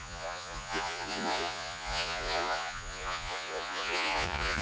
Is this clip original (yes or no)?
no